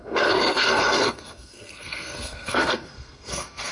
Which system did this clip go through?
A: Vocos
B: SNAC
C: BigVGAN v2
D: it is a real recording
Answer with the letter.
B